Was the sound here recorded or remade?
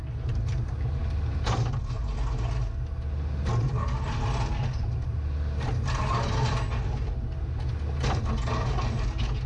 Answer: recorded